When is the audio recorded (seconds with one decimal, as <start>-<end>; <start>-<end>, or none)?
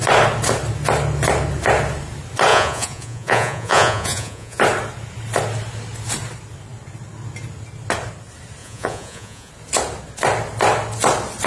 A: 0.0-2.5; 4.6-8.6; 9.5-11.5